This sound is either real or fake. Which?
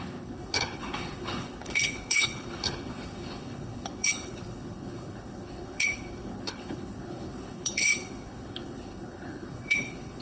fake